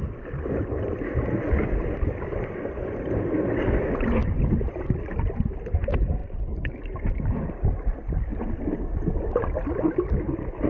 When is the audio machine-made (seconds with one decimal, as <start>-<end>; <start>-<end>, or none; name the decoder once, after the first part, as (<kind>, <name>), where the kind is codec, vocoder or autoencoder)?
none